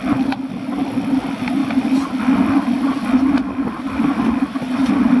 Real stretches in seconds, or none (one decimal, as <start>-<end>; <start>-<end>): 0.0-5.2